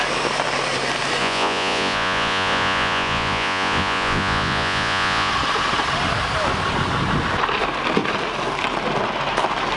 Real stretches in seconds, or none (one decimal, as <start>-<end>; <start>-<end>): 0.0-1.2; 5.3-9.8